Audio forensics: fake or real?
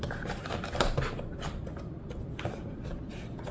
real